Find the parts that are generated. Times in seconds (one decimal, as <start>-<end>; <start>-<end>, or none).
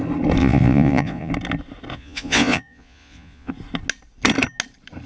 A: 0.4-1.3; 1.9-3.5